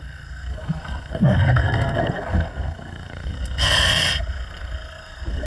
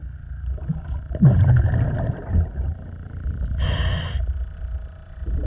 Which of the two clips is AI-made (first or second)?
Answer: first